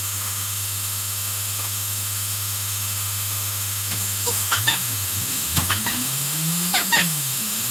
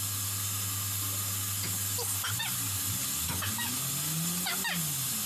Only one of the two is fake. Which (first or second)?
first